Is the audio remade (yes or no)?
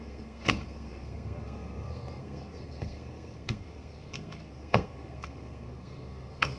yes